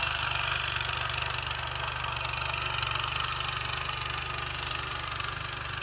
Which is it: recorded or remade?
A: recorded